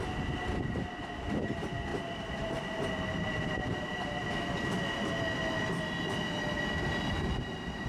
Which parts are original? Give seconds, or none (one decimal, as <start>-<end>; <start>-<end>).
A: 0.0-1.9; 5.1-7.9